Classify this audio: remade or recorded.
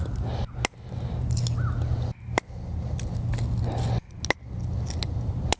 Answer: recorded